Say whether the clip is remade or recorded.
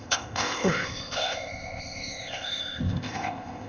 remade